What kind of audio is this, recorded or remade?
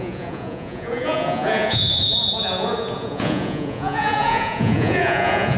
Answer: remade